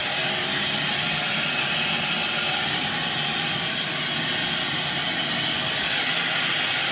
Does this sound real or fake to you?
real